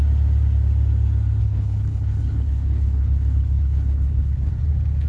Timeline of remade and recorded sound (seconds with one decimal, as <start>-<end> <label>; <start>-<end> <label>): 0.0-1.4 recorded; 1.4-4.5 remade; 4.5-5.1 recorded